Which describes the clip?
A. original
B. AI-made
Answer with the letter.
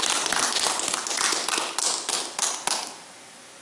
A